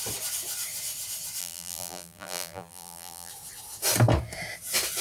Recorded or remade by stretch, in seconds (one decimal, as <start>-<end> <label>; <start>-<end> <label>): 0.0-1.4 recorded; 1.4-3.3 remade; 3.3-5.0 recorded